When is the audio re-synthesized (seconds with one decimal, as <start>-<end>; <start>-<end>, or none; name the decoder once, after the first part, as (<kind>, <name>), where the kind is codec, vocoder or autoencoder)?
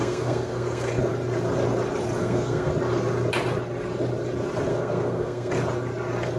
0.0-1.0 (codec, SNAC); 2.2-2.7; 4.7-5.5